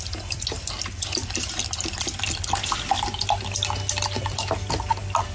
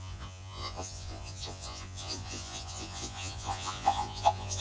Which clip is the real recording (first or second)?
first